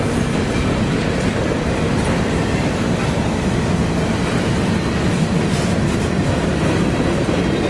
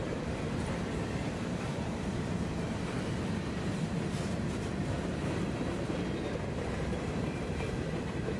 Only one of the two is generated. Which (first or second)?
second